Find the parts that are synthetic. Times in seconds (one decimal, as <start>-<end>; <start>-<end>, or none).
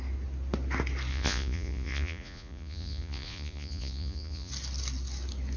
1.1-4.5